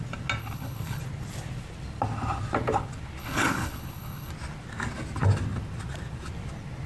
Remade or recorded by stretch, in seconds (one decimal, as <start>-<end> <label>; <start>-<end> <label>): 0.0-0.4 recorded; 0.4-1.0 remade; 1.0-3.2 recorded; 3.2-4.3 remade; 4.3-6.9 recorded